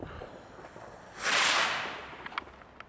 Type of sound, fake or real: real